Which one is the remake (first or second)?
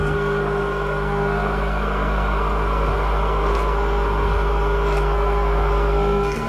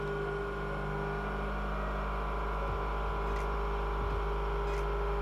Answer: first